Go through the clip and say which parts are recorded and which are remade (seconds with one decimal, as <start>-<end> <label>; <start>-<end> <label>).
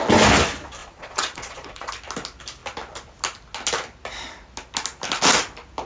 0.0-0.8 recorded; 0.8-1.9 remade; 1.9-5.9 recorded